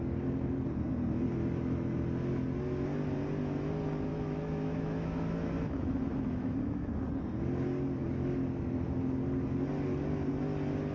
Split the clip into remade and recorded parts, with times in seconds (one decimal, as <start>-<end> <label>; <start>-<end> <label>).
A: 0.0-4.1 recorded; 4.1-6.9 remade; 6.9-10.9 recorded